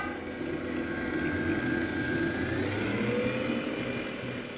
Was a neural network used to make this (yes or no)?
no